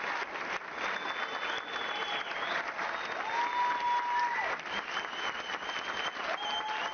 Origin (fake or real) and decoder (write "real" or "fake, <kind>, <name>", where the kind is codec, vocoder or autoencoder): real